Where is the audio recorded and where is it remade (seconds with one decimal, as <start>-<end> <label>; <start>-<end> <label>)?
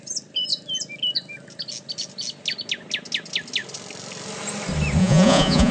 0.0-5.0 recorded; 5.0-5.7 remade